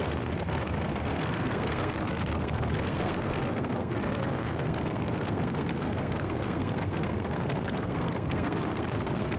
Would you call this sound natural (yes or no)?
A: no